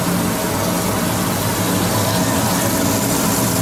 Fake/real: real